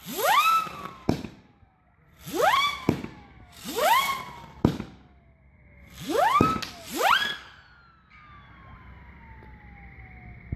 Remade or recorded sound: recorded